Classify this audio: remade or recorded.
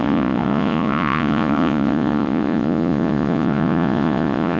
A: remade